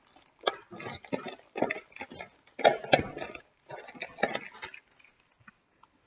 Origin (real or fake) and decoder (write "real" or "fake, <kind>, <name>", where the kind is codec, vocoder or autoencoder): real